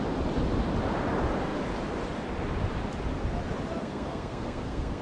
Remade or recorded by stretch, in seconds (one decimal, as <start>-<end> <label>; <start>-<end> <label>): 0.0-3.8 recorded; 3.8-5.0 remade